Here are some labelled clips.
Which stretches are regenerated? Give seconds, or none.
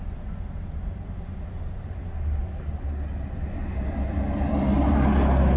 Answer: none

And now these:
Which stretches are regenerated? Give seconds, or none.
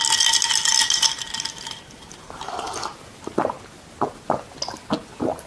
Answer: 0.7-3.4 (vocoder, BigVGAN v2)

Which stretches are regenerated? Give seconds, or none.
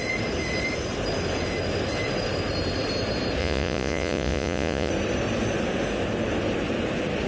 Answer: 3.4-4.9 (vocoder, Vocos)